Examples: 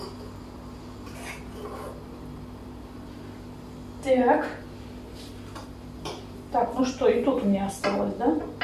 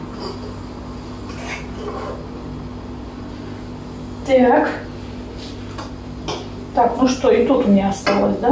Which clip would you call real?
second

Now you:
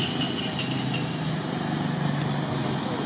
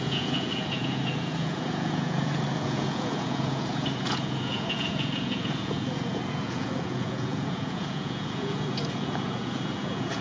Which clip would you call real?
first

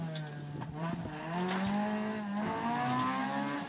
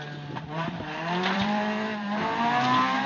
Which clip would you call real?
first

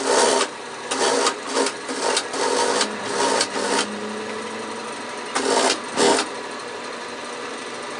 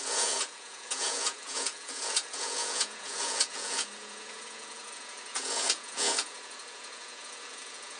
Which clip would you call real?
first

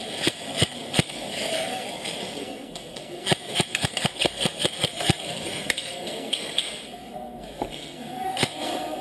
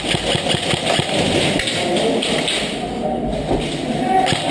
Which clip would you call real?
second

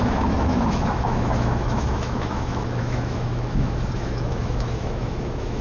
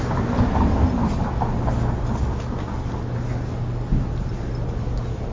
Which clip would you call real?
second